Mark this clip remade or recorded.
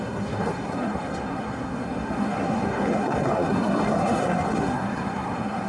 remade